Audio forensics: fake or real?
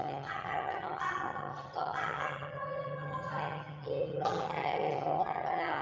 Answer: fake